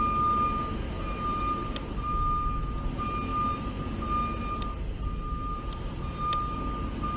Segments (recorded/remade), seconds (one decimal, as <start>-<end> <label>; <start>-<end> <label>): 0.0-0.8 recorded; 0.8-1.4 remade; 1.4-7.2 recorded